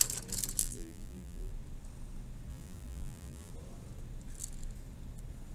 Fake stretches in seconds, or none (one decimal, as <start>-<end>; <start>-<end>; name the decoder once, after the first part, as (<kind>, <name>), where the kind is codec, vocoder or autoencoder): 0.6-1.5 (vocoder, BigVGAN v2); 2.5-3.5